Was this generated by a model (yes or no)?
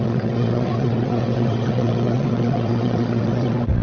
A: yes